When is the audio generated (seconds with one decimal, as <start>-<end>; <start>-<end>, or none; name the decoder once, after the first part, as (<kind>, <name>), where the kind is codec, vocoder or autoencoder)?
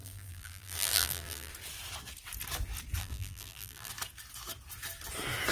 0.0-1.5 (vocoder, BigVGAN v2); 3.0-3.9